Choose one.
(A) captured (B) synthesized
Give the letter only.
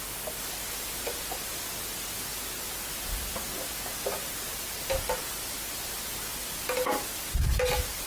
A